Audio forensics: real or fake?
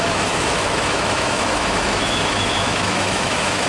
fake